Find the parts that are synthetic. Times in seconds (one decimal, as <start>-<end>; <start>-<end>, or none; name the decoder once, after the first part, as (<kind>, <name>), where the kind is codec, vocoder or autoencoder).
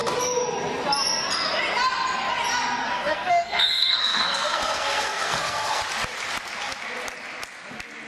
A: 2.8-5.8 (codec, SNAC)